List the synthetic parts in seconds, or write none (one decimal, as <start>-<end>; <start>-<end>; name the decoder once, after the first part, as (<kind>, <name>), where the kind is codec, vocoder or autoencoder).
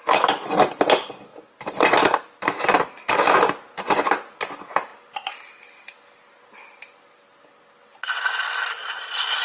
none